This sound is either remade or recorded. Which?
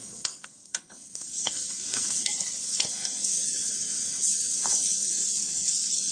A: remade